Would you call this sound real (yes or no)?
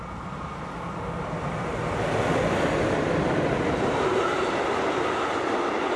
yes